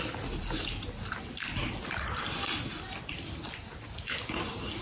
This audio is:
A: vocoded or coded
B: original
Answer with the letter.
B